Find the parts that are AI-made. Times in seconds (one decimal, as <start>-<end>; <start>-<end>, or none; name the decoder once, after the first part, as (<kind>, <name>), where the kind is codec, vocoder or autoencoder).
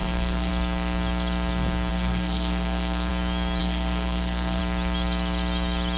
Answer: 0.0-0.5 (codec, SNAC); 1.9-3.1; 3.6-4.6